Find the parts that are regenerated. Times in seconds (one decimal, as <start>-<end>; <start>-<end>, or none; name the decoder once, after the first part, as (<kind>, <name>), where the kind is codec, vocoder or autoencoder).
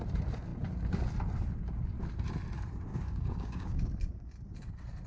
2.9-3.9 (codec, DAC)